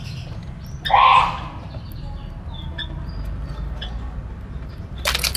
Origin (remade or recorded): recorded